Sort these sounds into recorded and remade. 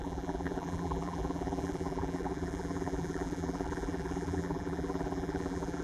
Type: remade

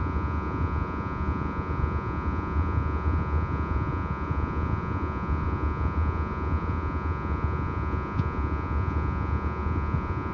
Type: remade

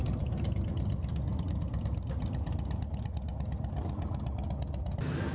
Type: recorded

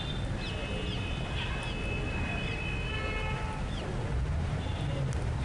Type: recorded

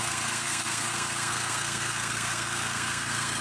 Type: remade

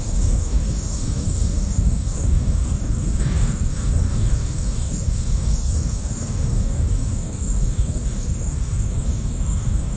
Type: remade